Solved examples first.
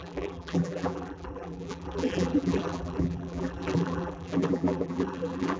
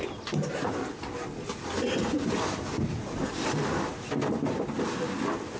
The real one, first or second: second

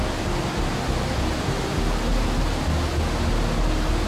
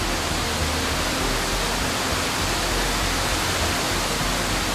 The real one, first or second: second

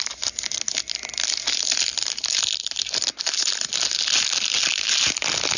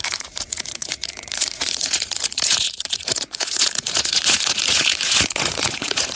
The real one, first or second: first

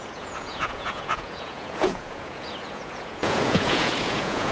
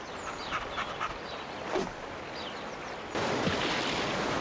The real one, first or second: second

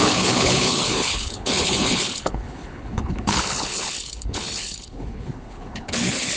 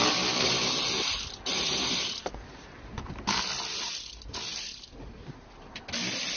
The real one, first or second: second